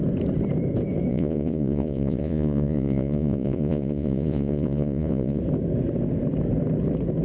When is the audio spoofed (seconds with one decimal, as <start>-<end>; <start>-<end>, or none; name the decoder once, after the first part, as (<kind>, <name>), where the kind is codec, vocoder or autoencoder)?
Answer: 1.1-5.4 (vocoder, Vocos)